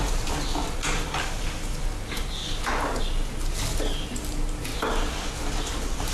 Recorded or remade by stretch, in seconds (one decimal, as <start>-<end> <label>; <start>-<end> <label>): 0.0-6.1 recorded